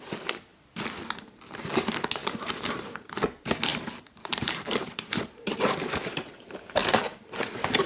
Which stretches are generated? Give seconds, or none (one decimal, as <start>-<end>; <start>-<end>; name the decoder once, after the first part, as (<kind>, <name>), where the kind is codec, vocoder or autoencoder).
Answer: 2.2-3.1 (vocoder, BigVGAN v2); 3.7-6.8

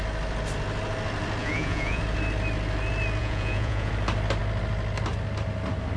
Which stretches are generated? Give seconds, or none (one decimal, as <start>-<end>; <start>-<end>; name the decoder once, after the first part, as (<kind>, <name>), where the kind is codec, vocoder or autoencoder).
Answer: 1.4-2.0 (vocoder, Vocos); 3.2-3.9

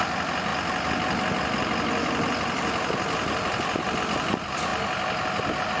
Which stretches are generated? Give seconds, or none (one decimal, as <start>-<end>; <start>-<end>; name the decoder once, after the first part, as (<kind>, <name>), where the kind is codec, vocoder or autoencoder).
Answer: none

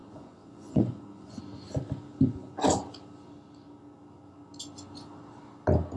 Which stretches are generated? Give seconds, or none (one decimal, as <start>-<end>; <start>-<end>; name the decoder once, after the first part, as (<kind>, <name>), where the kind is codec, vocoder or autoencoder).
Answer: 0.0-1.4 (vocoder, Vocos)

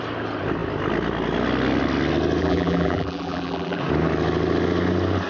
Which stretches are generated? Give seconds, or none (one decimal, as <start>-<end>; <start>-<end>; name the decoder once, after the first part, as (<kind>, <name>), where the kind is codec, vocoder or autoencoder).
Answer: 2.4-3.8 (vocoder, BigVGAN v2)

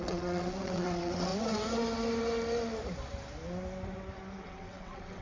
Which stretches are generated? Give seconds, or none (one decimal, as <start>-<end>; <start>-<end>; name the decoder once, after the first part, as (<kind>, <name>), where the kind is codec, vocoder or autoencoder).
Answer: 0.0-1.3 (vocoder, WaveNeXt); 4.4-5.2

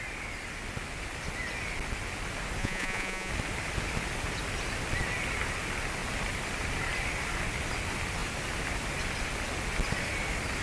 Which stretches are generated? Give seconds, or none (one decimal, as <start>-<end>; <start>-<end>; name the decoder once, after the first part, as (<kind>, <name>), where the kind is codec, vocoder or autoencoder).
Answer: 2.6-3.3 (vocoder, Vocos)